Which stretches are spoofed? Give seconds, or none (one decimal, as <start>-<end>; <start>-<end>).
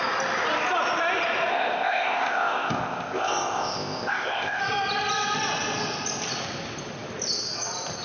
1.5-4.6